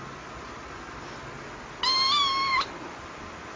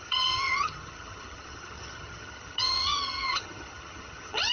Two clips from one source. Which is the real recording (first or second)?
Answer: first